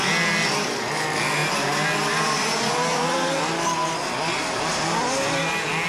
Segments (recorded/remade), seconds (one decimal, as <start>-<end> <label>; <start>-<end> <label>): 0.0-5.9 recorded